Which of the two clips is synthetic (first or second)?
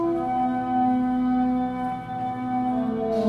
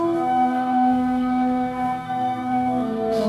second